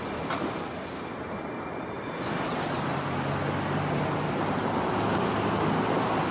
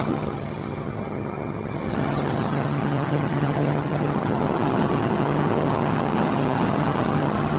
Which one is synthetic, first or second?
second